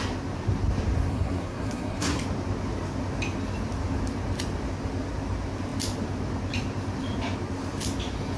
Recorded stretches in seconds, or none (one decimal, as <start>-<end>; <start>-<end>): 0.0-1.1; 2.2-8.4